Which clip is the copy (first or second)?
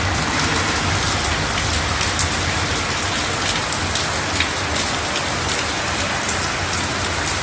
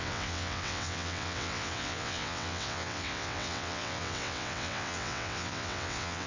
second